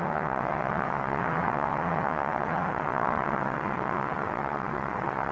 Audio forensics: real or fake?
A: fake